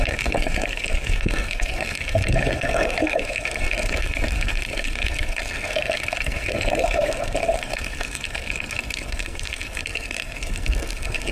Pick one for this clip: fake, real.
fake